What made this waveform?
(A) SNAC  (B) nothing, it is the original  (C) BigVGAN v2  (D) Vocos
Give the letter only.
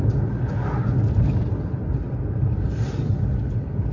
B